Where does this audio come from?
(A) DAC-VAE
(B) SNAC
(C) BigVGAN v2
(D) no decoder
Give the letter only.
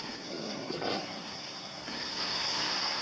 B